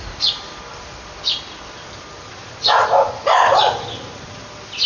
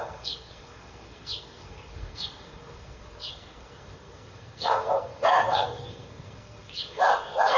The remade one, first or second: second